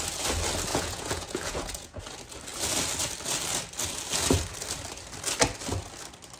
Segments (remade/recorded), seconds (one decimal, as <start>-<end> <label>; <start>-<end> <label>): 0.0-0.7 recorded; 0.7-2.0 remade; 2.0-6.4 recorded